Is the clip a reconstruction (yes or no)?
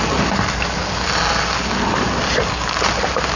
no